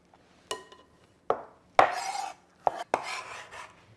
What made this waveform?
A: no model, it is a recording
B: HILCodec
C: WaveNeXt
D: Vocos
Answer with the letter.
A